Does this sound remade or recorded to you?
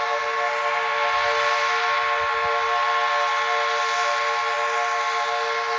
recorded